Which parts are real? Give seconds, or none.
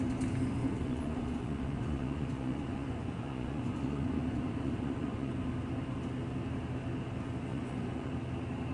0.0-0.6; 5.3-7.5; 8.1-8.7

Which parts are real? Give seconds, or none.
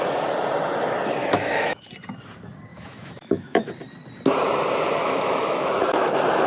0.0-1.2; 1.9-2.7; 3.7-5.0; 6.1-6.5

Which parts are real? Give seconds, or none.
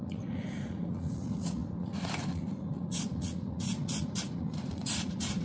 none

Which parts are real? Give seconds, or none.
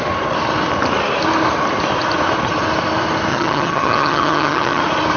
0.0-3.3; 4.8-5.2